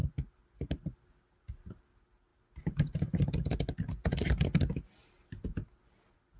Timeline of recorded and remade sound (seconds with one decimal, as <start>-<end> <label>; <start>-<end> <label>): 0.0-0.9 remade; 0.9-2.3 recorded; 2.3-3.4 remade; 3.4-6.4 recorded